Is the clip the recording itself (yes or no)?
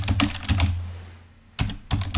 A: yes